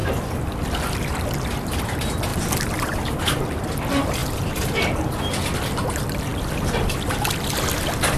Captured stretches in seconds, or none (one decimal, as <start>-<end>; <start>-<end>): 0.0-2.3; 3.2-4.2; 4.7-8.2